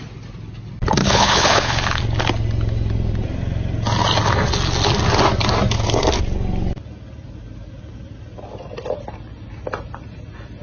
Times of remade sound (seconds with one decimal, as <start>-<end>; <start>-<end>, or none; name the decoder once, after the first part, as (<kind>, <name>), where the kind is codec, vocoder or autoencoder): 1.0-2.0 (codec, HILCodec)